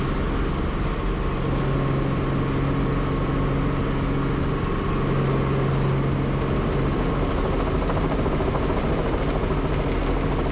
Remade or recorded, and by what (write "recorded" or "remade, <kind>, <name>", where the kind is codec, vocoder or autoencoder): recorded